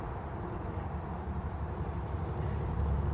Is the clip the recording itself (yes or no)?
no